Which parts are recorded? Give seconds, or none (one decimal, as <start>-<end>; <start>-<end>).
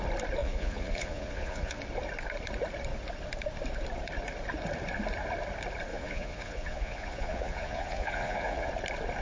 0.0-0.4; 1.8-5.9; 8.7-9.2